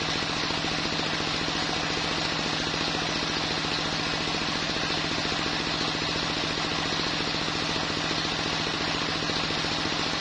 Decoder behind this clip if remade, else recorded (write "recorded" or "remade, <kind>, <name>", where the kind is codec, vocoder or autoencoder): recorded